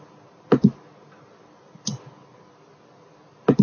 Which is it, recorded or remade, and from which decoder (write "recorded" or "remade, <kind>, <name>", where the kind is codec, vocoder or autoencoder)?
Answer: recorded